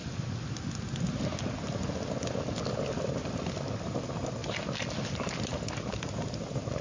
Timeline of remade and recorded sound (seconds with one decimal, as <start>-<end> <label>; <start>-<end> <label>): 0.0-6.8 recorded

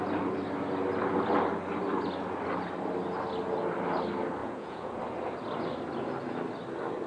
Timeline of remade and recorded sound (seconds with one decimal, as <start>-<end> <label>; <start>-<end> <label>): 0.0-4.4 recorded; 4.4-5.0 remade; 5.0-7.1 recorded

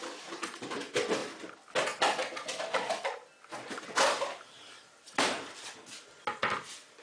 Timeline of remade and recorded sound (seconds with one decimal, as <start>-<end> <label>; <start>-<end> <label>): 0.0-7.0 recorded

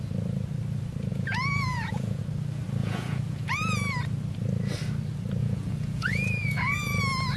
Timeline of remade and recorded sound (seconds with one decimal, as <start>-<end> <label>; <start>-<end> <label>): 0.0-1.1 recorded; 1.1-2.2 remade; 2.2-2.8 recorded; 2.8-3.8 remade; 3.8-5.4 recorded; 5.4-7.0 remade; 7.0-7.4 recorded

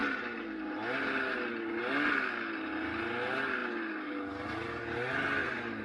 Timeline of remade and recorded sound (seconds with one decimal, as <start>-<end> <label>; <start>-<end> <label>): 0.0-5.8 recorded

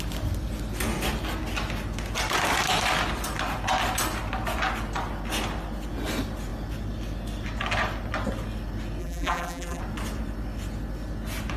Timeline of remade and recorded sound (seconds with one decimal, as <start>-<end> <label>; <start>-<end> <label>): 0.0-9.0 recorded; 9.0-9.8 remade; 9.8-11.6 recorded